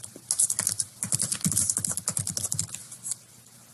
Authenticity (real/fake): real